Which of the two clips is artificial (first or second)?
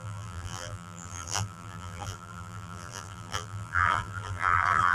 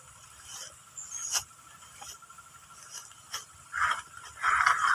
first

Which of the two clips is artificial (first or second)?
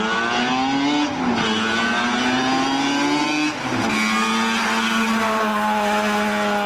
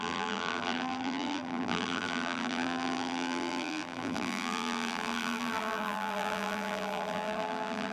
second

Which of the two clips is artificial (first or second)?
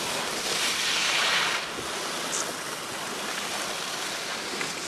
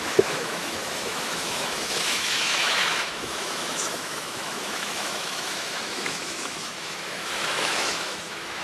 second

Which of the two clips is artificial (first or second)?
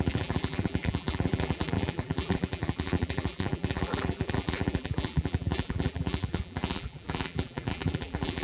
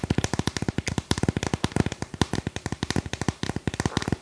first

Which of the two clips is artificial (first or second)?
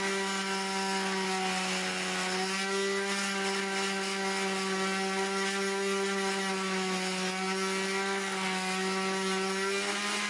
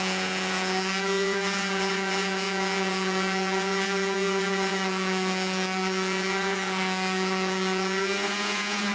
second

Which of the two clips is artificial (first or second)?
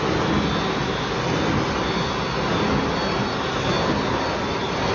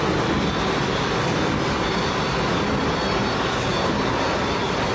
second